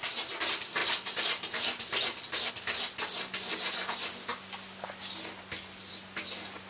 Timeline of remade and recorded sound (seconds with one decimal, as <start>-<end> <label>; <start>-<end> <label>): 0.0-0.8 recorded; 0.8-2.5 remade; 2.5-6.7 recorded